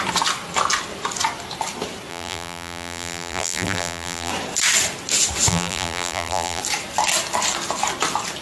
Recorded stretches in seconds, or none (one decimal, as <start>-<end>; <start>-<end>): 0.0-2.1; 4.3-5.5; 6.6-8.4